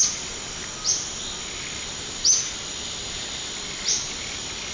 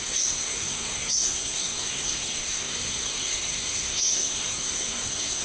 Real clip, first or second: first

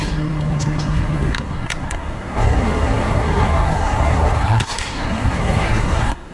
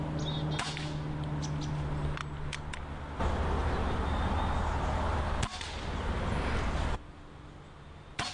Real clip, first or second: second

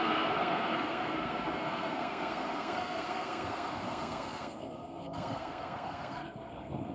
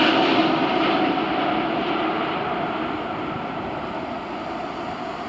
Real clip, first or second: second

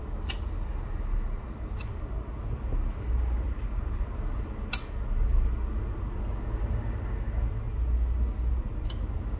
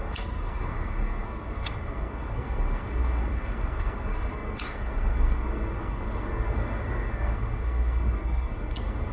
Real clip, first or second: first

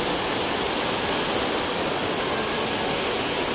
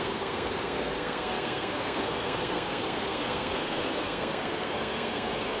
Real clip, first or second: first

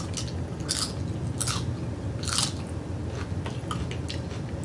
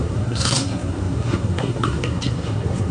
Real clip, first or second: first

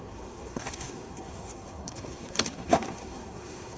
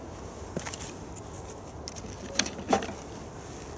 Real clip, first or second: second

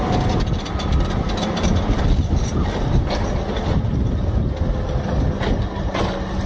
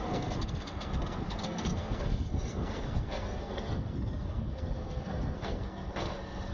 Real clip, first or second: first